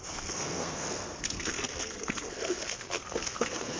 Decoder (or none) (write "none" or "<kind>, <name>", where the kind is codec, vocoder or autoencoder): codec, SNAC